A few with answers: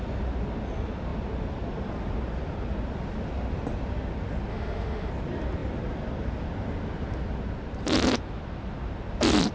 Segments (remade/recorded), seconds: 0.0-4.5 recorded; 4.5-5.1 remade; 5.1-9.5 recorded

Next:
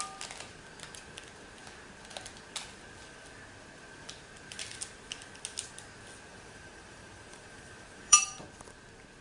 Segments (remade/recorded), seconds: 0.0-6.3 recorded; 6.3-8.4 remade; 8.4-9.2 recorded

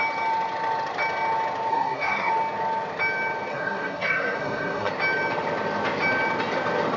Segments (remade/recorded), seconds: 0.0-1.7 recorded; 1.7-2.3 remade; 2.3-3.5 recorded; 3.5-4.9 remade; 4.9-7.0 recorded

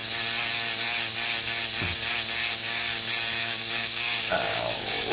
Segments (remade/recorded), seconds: 0.0-2.4 recorded; 2.4-3.0 remade; 3.0-3.4 recorded; 3.4-5.1 remade

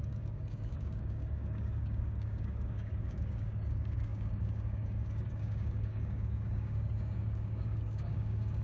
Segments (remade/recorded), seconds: 0.0-8.6 remade

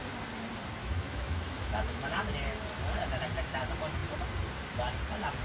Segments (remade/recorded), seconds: 0.0-0.8 recorded; 0.8-2.3 remade; 2.3-5.4 recorded

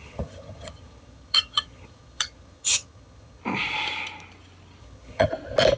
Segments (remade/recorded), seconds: 0.0-3.4 remade; 3.4-4.8 recorded; 4.8-5.3 remade; 5.3-5.8 recorded